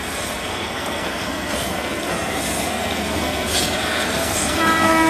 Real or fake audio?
fake